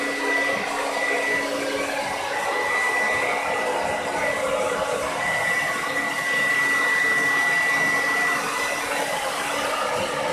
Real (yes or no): yes